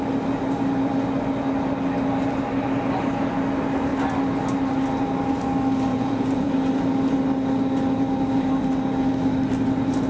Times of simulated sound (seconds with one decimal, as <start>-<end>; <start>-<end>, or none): 5.9-6.5